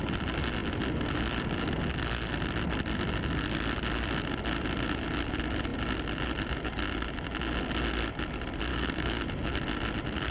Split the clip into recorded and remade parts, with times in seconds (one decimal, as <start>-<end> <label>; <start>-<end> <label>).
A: 0.0-8.7 recorded; 8.7-9.2 remade; 9.2-10.3 recorded